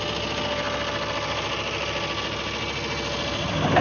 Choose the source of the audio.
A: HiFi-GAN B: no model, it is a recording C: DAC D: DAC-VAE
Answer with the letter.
B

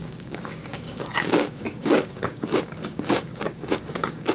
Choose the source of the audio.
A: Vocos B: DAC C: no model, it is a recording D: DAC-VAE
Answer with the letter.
B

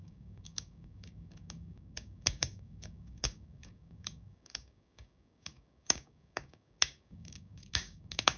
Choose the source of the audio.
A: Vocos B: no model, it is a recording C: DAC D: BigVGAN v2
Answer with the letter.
C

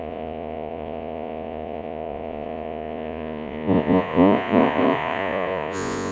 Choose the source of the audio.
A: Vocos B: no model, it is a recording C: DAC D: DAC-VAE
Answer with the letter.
A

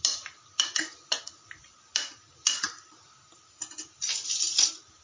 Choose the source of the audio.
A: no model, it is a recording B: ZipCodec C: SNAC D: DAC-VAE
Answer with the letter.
A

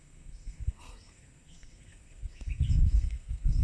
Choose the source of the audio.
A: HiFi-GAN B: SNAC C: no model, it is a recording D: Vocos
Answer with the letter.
B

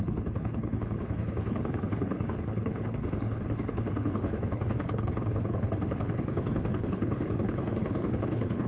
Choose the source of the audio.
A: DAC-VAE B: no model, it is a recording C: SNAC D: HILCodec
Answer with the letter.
D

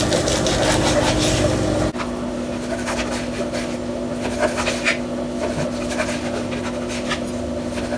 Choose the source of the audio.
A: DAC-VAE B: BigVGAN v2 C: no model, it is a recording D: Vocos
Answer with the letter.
C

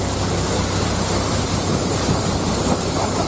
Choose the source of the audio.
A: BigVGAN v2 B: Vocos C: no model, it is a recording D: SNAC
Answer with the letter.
C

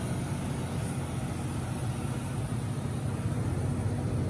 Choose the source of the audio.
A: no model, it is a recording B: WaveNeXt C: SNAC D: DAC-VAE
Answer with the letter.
A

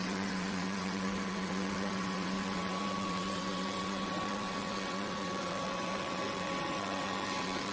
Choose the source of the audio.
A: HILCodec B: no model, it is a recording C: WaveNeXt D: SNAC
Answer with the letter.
C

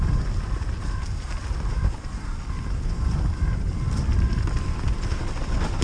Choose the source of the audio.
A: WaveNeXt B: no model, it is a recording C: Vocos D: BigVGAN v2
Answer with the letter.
B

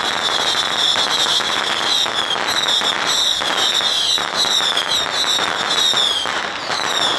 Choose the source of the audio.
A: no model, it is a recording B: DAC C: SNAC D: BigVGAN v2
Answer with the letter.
A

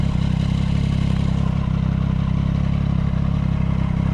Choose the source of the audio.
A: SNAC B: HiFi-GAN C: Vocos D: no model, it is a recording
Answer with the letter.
D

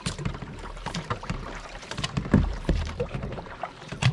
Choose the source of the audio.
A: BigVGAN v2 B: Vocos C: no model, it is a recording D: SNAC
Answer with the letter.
A